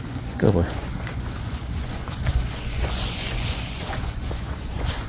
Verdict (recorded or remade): remade